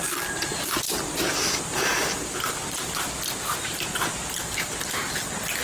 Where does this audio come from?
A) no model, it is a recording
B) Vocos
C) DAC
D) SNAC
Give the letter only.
A